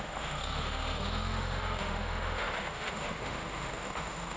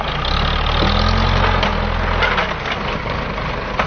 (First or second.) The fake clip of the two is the first